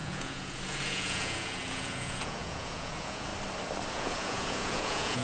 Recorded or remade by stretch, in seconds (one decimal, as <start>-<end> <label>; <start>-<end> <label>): 0.0-3.3 remade; 3.3-3.9 recorded; 3.9-5.2 remade